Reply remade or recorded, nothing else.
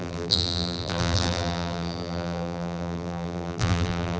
remade